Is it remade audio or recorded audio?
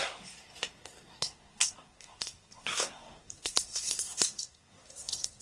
remade